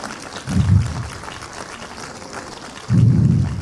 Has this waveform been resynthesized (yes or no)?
no